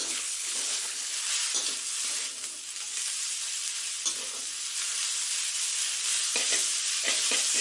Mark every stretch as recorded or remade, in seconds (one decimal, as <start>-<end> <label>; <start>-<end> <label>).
0.0-1.1 remade; 1.1-7.6 recorded

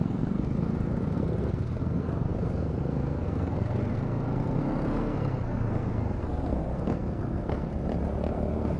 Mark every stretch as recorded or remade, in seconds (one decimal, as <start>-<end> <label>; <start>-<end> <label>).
0.0-7.7 remade; 7.7-8.3 recorded; 8.3-8.8 remade